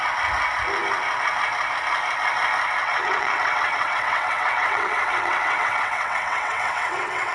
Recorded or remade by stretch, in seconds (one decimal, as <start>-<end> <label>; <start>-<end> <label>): 0.0-2.8 recorded; 2.8-7.3 remade